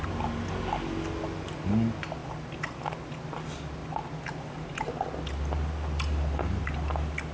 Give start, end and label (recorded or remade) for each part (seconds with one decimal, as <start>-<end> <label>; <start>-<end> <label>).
0.0-7.3 recorded

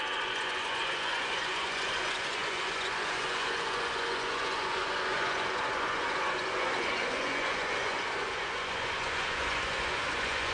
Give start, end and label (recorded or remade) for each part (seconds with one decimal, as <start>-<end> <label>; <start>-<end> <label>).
0.0-10.5 remade

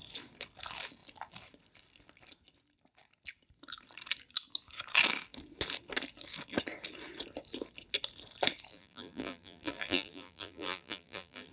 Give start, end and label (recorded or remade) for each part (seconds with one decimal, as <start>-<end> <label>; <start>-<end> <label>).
0.0-8.7 recorded; 8.7-11.5 remade

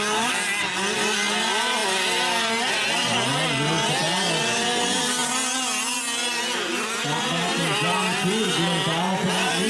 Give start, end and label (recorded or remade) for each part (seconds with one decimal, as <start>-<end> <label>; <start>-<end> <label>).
0.0-9.7 recorded

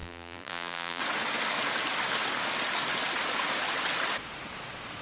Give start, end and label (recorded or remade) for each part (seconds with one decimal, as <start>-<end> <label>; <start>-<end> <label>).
0.0-1.0 remade; 1.0-5.0 recorded